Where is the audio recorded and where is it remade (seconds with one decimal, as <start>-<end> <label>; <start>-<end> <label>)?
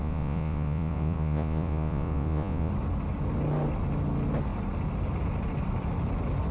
0.0-2.7 remade; 2.7-6.5 recorded